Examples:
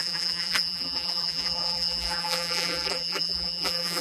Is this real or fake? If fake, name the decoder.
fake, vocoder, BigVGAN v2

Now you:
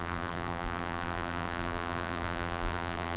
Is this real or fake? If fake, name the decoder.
fake, vocoder, BigVGAN v2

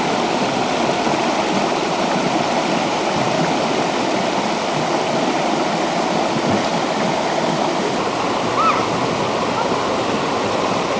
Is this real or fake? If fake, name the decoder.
real